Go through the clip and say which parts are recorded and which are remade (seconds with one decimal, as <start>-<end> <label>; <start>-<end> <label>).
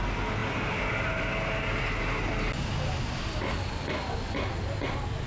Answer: 0.0-5.3 recorded